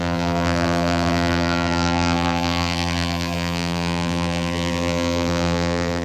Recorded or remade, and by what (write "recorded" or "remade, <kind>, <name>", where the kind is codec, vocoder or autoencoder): remade, vocoder, BigVGAN v2